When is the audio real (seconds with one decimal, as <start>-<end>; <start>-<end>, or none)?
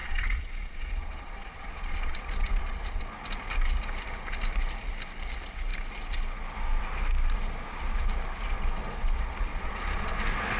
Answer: 3.0-9.5; 10.1-10.6